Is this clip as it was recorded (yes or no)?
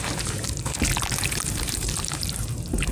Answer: no